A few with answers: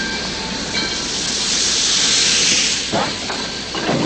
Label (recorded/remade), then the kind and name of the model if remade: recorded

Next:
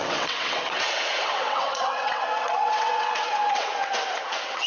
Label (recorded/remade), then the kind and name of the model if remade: remade, vocoder, WaveNeXt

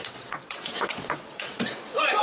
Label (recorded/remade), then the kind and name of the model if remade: remade, vocoder, WaveNeXt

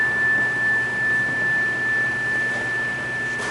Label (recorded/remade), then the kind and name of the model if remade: recorded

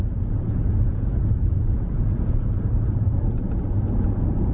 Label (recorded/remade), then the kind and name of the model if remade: remade, vocoder, Vocos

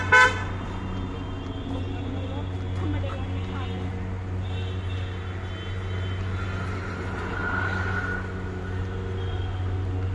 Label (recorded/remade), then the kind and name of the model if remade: recorded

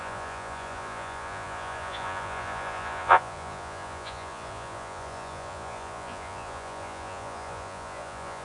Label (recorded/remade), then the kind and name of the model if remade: remade, vocoder, Vocos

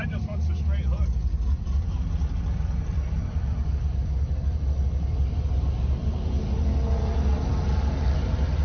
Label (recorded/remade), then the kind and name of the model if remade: remade, vocoder, BigVGAN v2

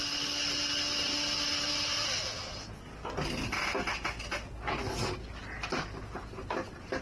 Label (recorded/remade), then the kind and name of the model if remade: recorded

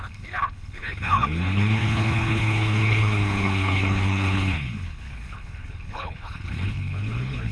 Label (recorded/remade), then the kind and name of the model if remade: remade, codec, HILCodec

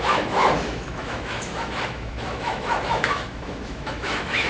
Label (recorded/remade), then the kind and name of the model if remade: remade, autoencoder, DAC-VAE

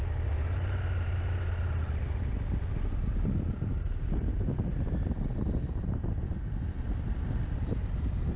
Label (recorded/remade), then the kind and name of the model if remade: recorded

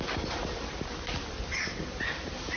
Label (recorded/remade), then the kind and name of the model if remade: recorded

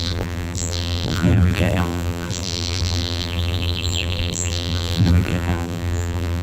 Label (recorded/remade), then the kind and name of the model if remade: remade, vocoder, BigVGAN v2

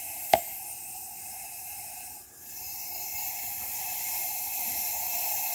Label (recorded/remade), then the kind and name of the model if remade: remade, vocoder, BigVGAN v2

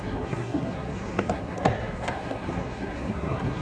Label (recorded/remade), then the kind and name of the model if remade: remade, codec, SNAC